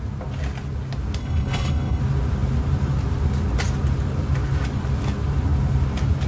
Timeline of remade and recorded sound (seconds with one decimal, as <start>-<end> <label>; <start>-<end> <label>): 0.0-1.2 recorded; 1.2-2.0 remade; 2.0-6.3 recorded

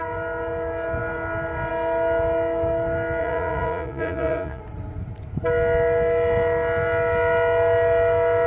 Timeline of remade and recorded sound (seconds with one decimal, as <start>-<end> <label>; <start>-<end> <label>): 0.0-3.2 recorded; 3.2-4.6 remade; 4.6-8.5 recorded

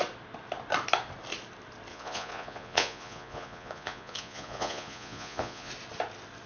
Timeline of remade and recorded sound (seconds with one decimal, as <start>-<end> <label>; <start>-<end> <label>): 0.0-1.9 recorded; 1.9-5.7 remade; 5.7-6.5 recorded

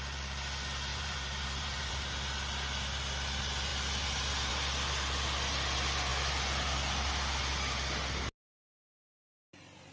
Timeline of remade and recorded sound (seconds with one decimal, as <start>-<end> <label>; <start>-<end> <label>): 0.0-0.9 recorded; 0.9-1.9 remade; 1.9-9.9 recorded

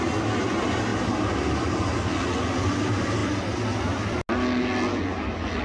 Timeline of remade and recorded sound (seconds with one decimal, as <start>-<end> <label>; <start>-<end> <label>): 0.0-5.6 recorded

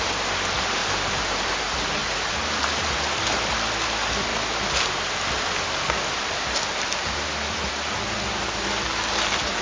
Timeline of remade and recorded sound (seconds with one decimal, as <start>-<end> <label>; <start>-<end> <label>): 0.0-0.8 recorded; 0.8-1.5 remade; 1.5-2.0 recorded; 2.0-2.9 remade; 2.9-9.6 recorded